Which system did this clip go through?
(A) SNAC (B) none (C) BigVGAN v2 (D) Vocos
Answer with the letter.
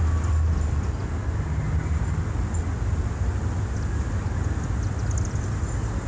B